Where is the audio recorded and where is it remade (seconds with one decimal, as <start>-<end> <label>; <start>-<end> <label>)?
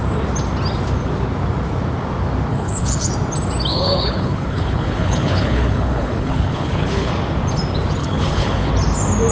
0.0-2.5 recorded; 2.5-3.1 remade; 3.1-3.7 recorded; 3.7-7.1 remade; 7.1-8.0 recorded; 8.0-8.7 remade; 8.7-9.3 recorded